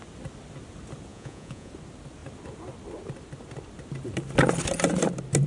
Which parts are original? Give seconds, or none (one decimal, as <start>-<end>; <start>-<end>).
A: 0.0-1.1; 1.7-5.5